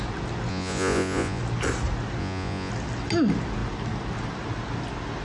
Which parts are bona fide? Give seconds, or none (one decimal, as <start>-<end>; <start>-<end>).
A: 0.0-0.5; 1.4-2.2; 2.7-5.2